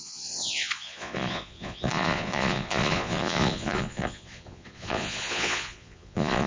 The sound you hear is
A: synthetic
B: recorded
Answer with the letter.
A